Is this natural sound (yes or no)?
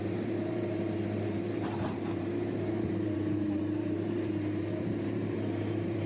no